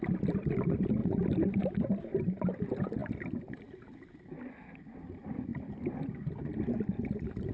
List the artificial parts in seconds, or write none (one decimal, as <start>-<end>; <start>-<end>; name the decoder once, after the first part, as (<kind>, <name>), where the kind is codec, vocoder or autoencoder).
none